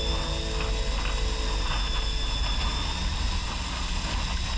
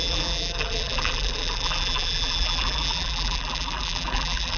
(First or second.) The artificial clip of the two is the second